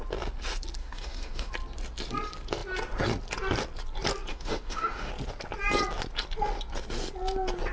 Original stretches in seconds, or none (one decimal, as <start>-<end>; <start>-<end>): 0.0-0.8; 1.5-4.3; 5.1-7.7